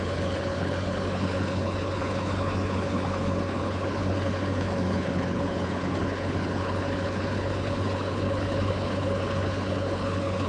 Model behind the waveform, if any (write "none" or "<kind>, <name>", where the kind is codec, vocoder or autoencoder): codec, HILCodec